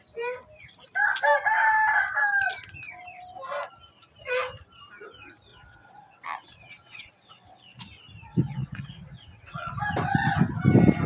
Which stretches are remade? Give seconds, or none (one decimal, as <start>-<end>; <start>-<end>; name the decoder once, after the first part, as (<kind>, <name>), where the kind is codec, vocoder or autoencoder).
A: 5.5-7.8 (vocoder, WaveNeXt); 8.3-9.7